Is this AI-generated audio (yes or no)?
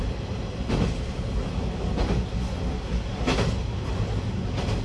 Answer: no